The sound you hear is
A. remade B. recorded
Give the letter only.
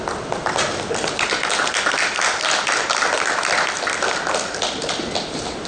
B